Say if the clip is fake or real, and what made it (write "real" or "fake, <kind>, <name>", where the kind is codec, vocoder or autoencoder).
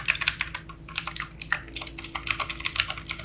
real